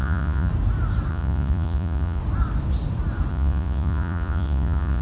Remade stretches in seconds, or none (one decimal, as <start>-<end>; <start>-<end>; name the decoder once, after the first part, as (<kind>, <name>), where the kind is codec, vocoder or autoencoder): 0.0-0.5 (vocoder, Vocos); 1.1-2.2; 3.3-5.0